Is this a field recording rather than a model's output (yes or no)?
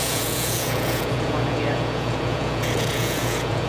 no